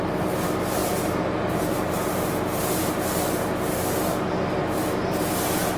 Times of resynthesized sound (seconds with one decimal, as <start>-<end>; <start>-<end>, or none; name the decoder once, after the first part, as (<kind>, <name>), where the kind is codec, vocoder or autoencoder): none